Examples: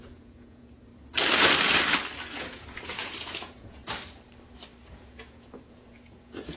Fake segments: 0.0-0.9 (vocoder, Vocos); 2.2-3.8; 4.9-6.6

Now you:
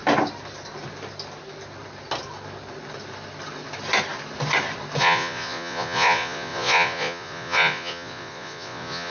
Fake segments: 5.0-9.1 (vocoder, Vocos)